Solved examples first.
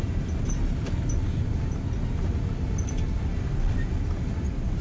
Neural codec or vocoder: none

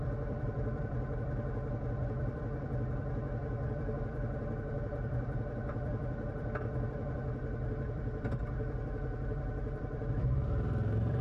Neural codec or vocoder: vocoder, BigVGAN v2